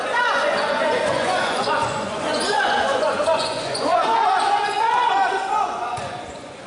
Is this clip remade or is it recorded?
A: remade